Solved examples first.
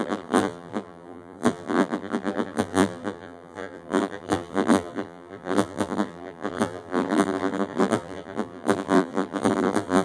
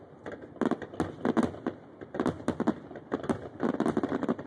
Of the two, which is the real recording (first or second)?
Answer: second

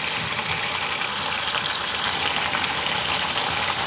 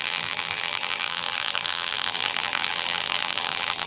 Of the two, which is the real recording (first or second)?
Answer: first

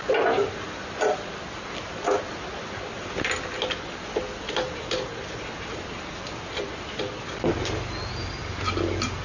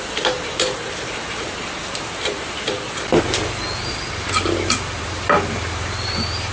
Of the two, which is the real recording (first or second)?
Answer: first